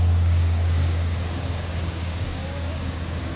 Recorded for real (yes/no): no